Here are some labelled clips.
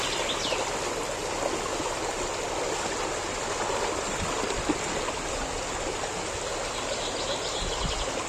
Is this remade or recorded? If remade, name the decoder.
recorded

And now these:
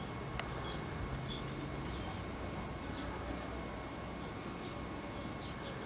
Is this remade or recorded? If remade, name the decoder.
recorded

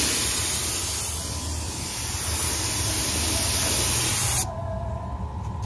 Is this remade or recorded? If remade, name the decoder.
recorded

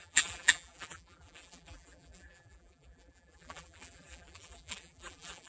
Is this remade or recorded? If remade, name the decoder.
remade, vocoder, BigVGAN v2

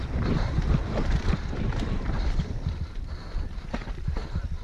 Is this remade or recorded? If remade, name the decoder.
remade, vocoder, BigVGAN v2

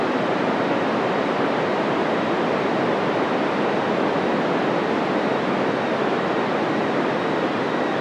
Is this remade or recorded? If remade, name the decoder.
recorded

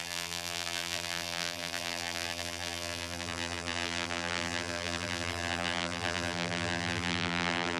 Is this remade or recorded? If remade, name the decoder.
remade, vocoder, BigVGAN v2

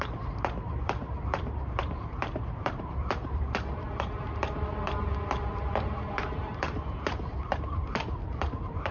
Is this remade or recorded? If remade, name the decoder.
remade, vocoder, BigVGAN v2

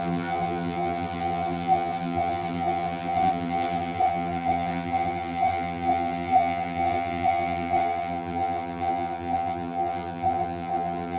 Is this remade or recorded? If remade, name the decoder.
remade, vocoder, BigVGAN v2